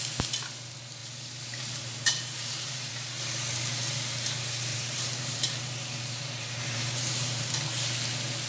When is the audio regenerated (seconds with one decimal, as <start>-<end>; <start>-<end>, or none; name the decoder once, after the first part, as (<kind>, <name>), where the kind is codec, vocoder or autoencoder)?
1.0-2.9 (vocoder, BigVGAN v2); 4.7-7.5